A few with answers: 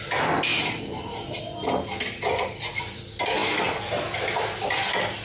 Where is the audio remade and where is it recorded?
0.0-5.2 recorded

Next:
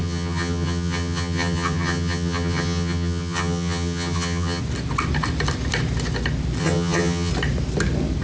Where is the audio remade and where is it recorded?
0.0-4.6 remade; 4.6-6.6 recorded; 6.6-7.3 remade; 7.3-8.2 recorded